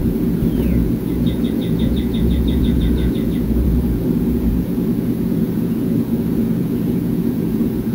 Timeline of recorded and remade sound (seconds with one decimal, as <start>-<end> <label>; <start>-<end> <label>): 0.0-7.9 remade